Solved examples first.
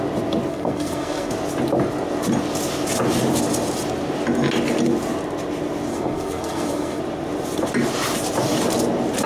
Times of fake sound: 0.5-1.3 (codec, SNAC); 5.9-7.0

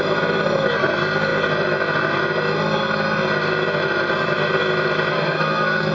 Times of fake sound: 5.1-5.9 (codec, SNAC)